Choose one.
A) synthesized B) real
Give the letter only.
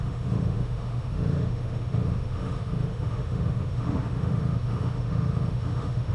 A